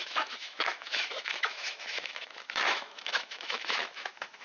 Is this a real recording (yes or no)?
no